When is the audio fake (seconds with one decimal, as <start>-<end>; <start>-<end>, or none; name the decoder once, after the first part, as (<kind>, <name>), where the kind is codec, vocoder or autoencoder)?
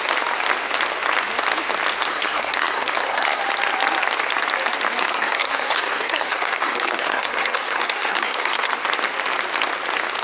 2.1-3.4 (codec, SNAC); 5.0-8.7